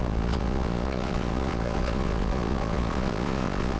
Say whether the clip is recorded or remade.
remade